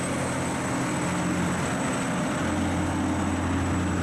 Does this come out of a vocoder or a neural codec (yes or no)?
no